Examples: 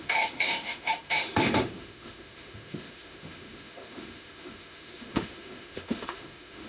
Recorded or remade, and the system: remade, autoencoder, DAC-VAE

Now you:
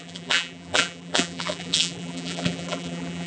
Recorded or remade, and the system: remade, vocoder, BigVGAN v2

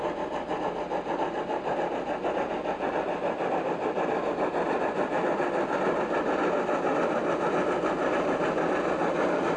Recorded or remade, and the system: recorded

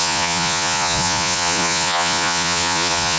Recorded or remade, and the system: remade, vocoder, Vocos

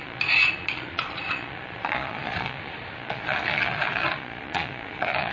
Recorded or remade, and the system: remade, vocoder, Vocos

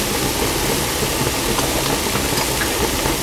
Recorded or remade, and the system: recorded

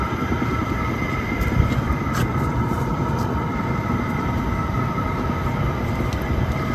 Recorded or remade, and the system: remade, vocoder, BigVGAN v2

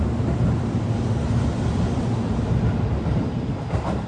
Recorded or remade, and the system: recorded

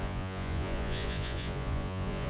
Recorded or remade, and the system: remade, vocoder, Vocos